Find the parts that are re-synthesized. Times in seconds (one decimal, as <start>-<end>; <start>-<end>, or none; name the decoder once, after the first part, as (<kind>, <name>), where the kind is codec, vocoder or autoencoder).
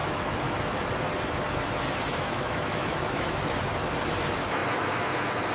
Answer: 0.0-0.6 (autoencoder, DAC-VAE); 2.1-3.4